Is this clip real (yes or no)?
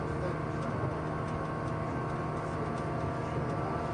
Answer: yes